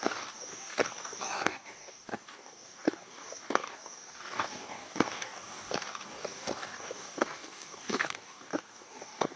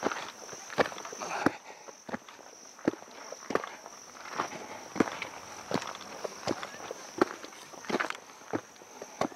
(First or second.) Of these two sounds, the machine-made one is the first